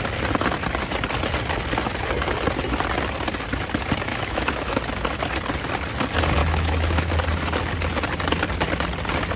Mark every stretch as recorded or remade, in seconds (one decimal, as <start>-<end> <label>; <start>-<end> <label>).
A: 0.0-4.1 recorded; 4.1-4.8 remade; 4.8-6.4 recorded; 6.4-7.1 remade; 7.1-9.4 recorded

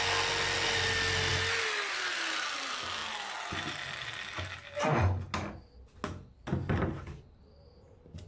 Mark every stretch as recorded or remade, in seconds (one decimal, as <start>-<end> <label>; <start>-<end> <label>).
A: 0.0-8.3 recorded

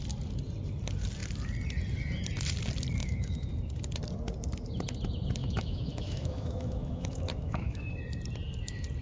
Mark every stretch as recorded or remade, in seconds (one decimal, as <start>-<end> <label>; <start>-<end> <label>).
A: 0.0-3.0 recorded; 3.0-3.5 remade; 3.5-5.4 recorded; 5.4-7.9 remade; 7.9-9.0 recorded

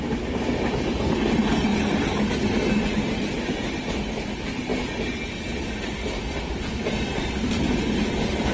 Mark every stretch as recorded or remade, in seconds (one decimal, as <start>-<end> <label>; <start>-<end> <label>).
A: 0.0-1.7 recorded; 1.7-2.3 remade; 2.3-8.5 recorded

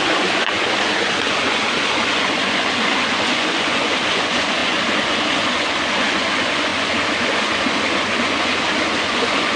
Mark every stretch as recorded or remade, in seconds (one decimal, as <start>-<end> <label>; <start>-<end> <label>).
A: 0.0-9.6 remade

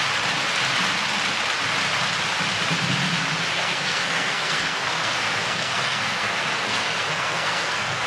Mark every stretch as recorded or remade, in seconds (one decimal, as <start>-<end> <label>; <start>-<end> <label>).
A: 0.0-3.5 recorded; 3.5-8.1 remade

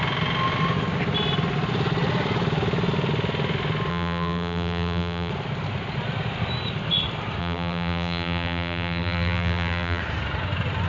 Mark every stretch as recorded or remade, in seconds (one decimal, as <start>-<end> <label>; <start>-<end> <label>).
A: 0.0-3.9 recorded; 3.9-5.3 remade; 5.3-7.4 recorded; 7.4-10.0 remade; 10.0-10.9 recorded